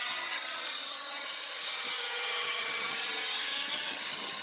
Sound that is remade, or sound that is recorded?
remade